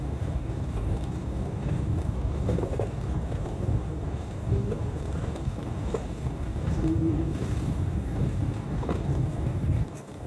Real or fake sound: fake